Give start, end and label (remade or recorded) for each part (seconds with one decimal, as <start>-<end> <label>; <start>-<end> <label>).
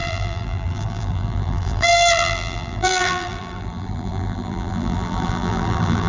0.0-6.1 remade